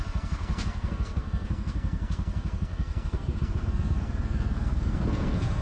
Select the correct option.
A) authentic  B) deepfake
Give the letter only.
B